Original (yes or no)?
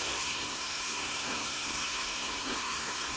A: no